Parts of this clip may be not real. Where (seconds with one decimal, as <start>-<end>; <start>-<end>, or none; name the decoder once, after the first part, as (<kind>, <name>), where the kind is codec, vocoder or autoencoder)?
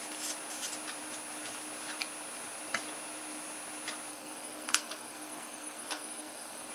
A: 4.1-6.7 (codec, SNAC)